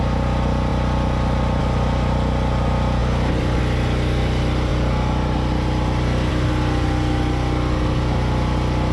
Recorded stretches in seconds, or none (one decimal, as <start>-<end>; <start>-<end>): 0.0-8.9

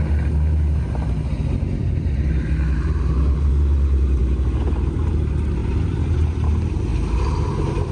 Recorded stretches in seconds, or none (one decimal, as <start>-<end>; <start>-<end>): 0.0-1.8; 3.5-5.6; 6.3-6.9

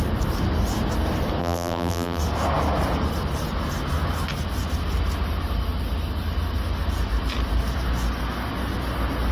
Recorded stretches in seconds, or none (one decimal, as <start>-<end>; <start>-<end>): 0.0-1.4; 2.2-9.3

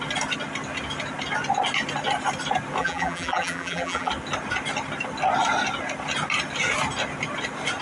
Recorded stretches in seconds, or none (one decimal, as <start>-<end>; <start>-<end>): 0.0-2.8; 4.1-7.8

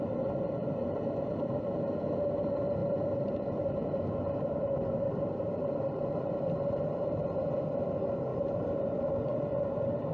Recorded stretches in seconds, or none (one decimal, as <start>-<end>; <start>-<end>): 0.0-0.6; 2.0-2.8; 7.4-8.3; 9.0-10.1

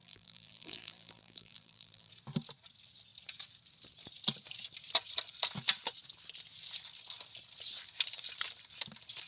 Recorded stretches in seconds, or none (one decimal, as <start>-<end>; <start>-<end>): 2.1-9.3

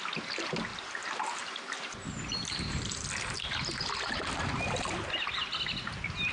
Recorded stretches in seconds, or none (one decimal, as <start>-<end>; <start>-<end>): 0.0-0.7; 1.6-2.3; 2.9-6.3